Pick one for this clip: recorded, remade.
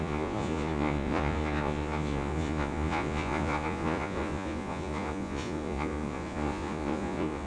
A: remade